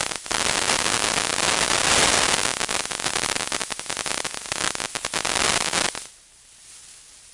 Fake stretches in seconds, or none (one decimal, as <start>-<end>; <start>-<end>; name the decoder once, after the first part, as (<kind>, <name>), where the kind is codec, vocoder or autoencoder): none

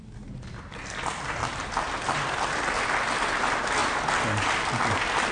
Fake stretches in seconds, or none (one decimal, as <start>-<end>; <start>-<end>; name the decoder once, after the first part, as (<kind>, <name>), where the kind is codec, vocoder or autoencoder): none